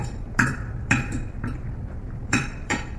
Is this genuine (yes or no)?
no